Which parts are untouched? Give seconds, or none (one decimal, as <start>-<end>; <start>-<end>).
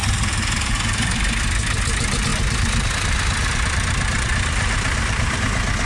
0.0-2.3; 5.4-5.9